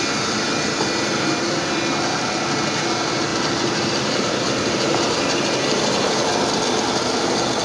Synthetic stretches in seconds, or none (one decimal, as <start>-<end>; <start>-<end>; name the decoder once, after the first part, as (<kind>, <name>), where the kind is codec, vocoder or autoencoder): 3.3-6.3 (vocoder, BigVGAN v2)